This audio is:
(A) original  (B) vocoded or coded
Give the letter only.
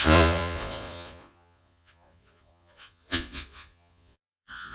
B